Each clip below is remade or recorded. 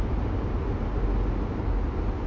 recorded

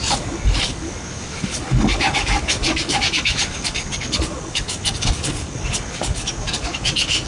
remade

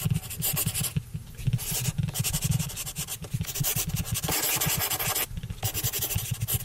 recorded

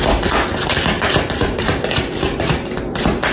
recorded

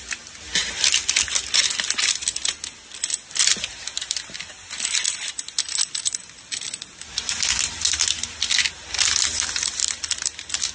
recorded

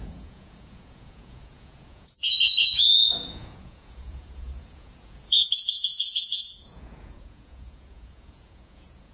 remade